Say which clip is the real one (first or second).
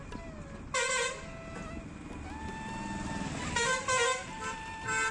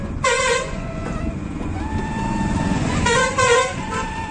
first